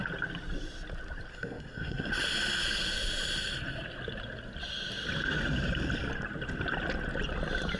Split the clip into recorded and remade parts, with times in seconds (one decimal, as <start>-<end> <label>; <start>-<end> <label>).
0.0-1.3 recorded; 1.3-2.1 remade; 2.1-7.8 recorded